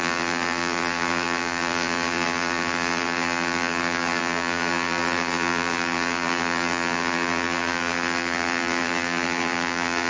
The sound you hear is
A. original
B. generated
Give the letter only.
B